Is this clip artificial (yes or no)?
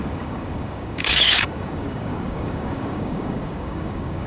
yes